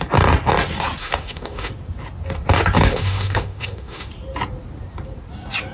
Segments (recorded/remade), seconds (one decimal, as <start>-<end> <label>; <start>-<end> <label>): 0.0-1.0 recorded; 1.0-1.7 remade; 1.7-2.9 recorded; 2.9-4.1 remade; 4.1-5.7 recorded